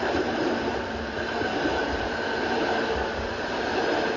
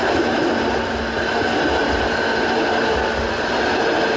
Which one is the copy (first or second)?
first